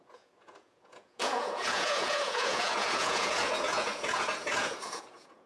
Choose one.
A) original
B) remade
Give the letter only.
B